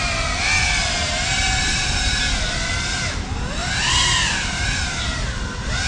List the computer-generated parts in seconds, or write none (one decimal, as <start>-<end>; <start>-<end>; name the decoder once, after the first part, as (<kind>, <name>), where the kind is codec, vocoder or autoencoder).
1.0-2.2 (vocoder, BigVGAN v2); 3.6-4.8